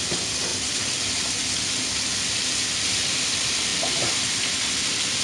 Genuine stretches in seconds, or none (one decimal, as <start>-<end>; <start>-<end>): 0.0-5.2